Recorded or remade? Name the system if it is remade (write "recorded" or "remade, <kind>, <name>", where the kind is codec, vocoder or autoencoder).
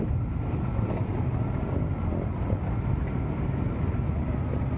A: recorded